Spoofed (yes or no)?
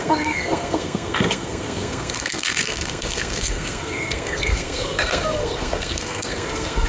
yes